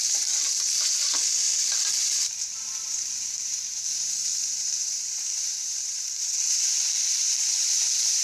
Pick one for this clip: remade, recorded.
remade